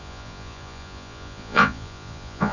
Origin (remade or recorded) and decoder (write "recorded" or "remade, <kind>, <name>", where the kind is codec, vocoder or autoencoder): remade, vocoder, Vocos